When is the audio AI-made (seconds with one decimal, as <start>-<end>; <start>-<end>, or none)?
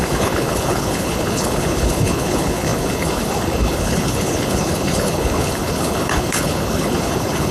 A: 0.0-7.5